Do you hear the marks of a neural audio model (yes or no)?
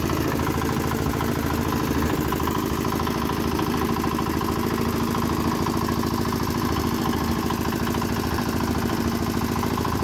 no